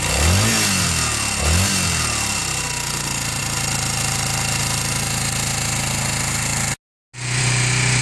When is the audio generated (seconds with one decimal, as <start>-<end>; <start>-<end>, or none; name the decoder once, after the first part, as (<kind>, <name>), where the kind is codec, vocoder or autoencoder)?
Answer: none